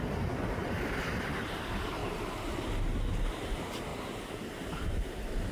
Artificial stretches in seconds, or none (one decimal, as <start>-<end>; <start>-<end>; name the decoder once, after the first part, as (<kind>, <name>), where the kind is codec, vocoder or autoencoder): 0.0-2.0 (vocoder, BigVGAN v2); 3.5-3.9; 4.5-5.5